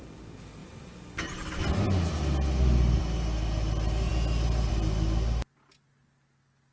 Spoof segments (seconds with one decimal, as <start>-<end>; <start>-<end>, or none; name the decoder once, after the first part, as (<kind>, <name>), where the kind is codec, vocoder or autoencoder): none